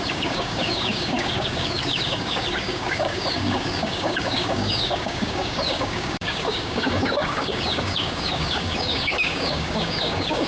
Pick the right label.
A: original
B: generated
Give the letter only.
B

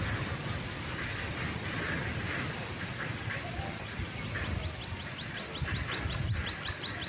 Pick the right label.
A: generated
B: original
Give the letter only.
B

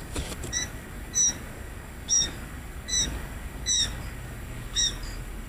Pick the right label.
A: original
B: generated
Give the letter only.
B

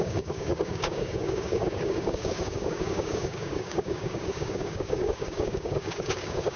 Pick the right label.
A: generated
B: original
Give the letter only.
A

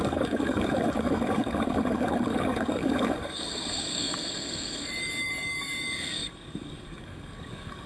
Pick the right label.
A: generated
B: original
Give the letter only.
A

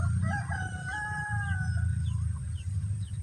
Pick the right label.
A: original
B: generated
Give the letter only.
A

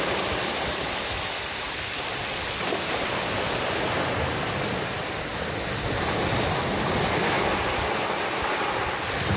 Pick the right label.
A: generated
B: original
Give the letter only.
B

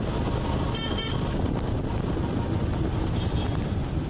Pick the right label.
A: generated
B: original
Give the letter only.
B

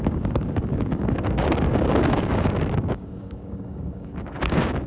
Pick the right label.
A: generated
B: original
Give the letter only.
A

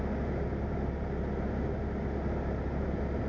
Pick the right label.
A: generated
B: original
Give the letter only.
B